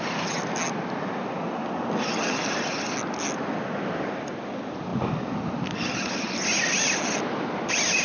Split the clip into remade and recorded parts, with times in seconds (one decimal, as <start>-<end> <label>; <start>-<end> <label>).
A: 0.0-8.0 recorded